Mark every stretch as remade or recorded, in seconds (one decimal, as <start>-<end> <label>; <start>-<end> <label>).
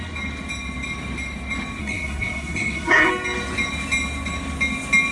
0.0-1.8 recorded; 1.8-3.1 remade; 3.1-5.1 recorded